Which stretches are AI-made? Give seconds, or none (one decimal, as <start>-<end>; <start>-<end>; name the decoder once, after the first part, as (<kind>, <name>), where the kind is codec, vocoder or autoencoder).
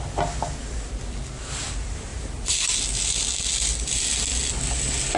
none